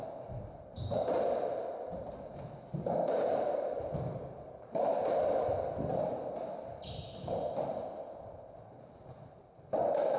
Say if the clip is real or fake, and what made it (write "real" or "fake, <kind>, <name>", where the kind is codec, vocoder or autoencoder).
real